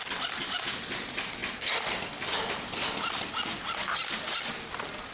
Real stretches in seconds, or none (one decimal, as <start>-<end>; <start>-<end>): 0.0-5.1